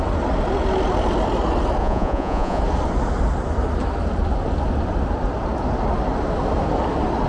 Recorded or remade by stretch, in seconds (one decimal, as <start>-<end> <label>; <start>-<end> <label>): 0.0-1.8 recorded; 1.8-2.6 remade; 2.6-7.3 recorded